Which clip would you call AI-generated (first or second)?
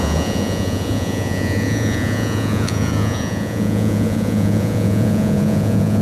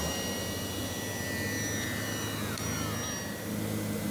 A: first